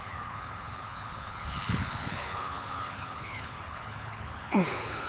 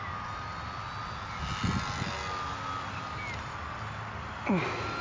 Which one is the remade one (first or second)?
first